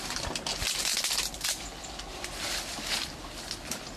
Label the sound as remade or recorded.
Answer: recorded